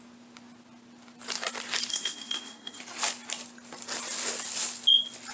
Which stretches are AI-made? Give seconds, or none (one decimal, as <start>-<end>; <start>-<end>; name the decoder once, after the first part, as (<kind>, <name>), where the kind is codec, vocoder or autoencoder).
1.9-2.8 (codec, SNAC)